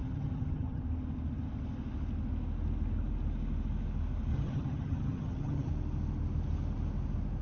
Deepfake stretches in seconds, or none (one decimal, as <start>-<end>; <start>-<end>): 0.0-0.8; 4.3-5.7